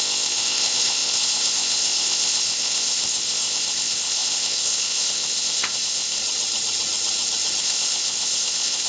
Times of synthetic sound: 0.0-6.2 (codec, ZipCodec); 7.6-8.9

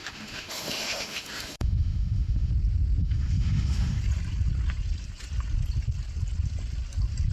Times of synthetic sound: 0.0-2.5 (autoencoder, DAC-VAE); 3.0-4.0

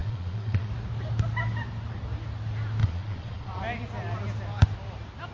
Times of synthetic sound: 0.0-0.7 (vocoder, Vocos); 2.8-3.6

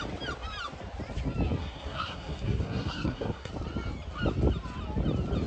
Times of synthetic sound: 1.6-3.5 (codec, SNAC)

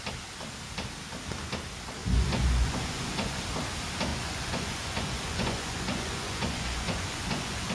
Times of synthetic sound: 2.0-3.4 (vocoder, Vocos); 4.1-7.7

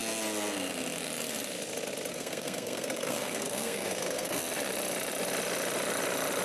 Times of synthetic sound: 2.1-4.4 (codec, SNAC)

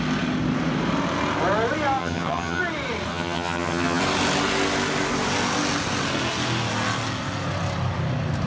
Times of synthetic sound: 2.0-2.6 (vocoder, HiFi-GAN); 3.1-4.0

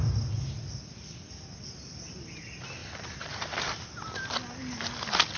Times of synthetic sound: 2.8-3.8 (vocoder, BigVGAN v2)